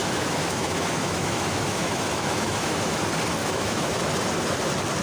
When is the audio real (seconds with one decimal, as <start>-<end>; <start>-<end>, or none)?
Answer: 3.0-3.4; 4.0-5.0